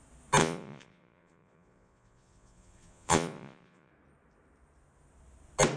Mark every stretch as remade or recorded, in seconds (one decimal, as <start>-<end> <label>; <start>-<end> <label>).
0.0-0.4 recorded; 0.4-3.9 remade; 3.9-5.8 recorded